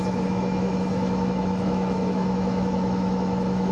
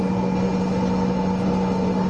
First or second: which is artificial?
first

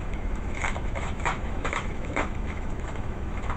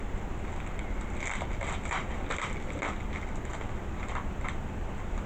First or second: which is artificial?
first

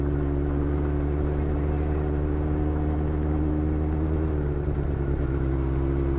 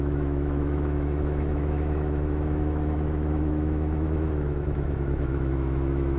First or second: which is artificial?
second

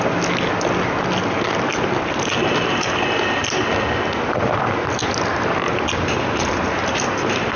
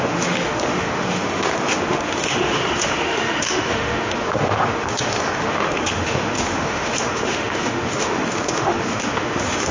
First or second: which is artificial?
second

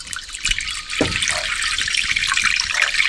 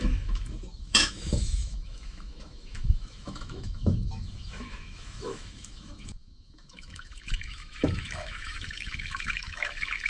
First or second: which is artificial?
second